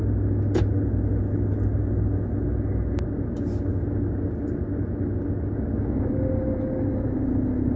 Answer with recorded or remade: recorded